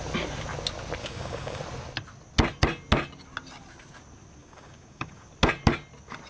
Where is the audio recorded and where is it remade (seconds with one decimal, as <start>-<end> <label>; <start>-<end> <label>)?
0.0-1.0 recorded; 1.0-1.6 remade; 1.6-4.4 recorded; 4.4-5.3 remade; 5.3-6.3 recorded